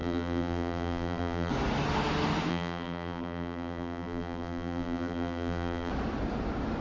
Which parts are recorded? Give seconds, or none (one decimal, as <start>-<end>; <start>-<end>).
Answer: 1.5-2.5; 5.9-6.8